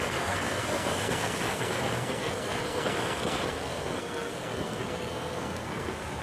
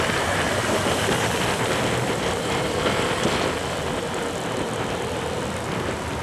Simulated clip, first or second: first